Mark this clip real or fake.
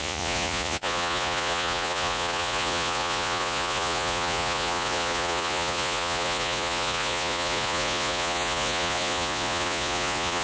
fake